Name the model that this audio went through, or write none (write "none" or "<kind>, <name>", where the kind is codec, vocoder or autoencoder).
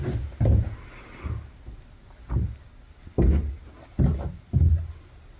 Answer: none